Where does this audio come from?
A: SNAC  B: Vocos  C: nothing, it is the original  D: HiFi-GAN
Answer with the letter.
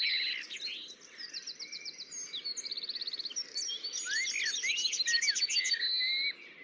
C